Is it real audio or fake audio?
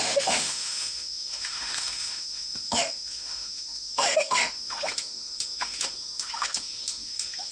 fake